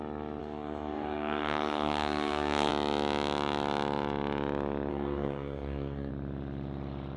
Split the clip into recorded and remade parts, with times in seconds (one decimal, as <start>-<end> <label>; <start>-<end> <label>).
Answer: 0.0-0.4 recorded; 0.4-2.7 remade; 2.7-4.9 recorded; 4.9-6.1 remade; 6.1-7.2 recorded